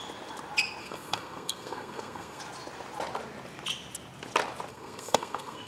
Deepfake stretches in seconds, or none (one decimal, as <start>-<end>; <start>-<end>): 0.8-2.4; 4.7-5.7